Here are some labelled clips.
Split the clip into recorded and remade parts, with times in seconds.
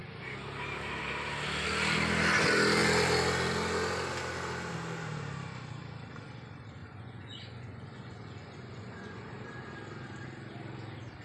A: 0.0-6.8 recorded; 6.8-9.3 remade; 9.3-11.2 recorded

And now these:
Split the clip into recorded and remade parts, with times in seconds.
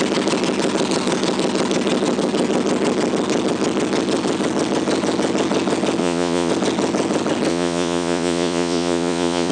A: 0.0-6.0 recorded; 6.0-6.5 remade; 6.5-7.5 recorded; 7.5-9.5 remade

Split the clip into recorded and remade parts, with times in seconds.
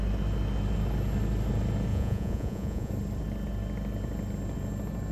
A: 0.0-1.9 recorded; 1.9-2.9 remade; 2.9-5.1 recorded